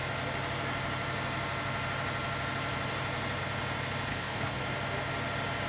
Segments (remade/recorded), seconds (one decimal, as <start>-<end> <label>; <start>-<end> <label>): 0.0-4.1 recorded; 4.1-4.6 remade; 4.6-5.7 recorded